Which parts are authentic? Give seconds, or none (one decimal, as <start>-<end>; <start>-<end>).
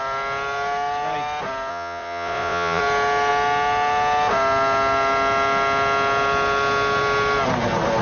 0.0-1.7; 2.8-8.0